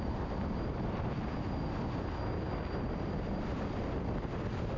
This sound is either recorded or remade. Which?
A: recorded